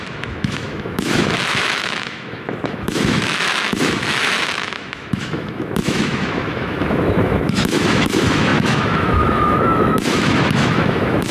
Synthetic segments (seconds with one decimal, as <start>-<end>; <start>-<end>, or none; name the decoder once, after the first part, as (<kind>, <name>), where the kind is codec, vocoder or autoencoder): 0.0-11.3 (autoencoder, DAC-VAE)